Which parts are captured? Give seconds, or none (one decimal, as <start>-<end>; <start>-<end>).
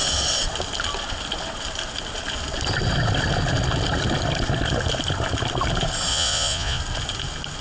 0.0-6.1; 6.8-7.6